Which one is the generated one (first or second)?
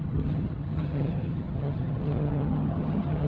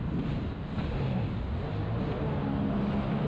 first